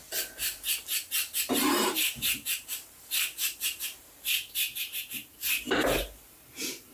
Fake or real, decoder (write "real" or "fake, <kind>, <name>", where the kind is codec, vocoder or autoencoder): fake, vocoder, BigVGAN v2